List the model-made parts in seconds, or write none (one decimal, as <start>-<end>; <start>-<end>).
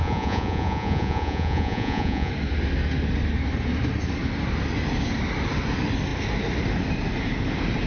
0.0-2.3